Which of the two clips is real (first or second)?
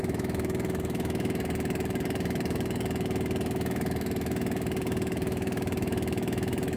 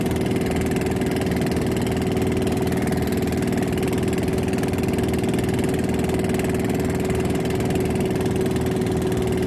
second